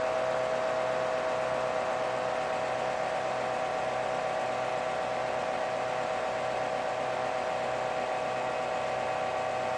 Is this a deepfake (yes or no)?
no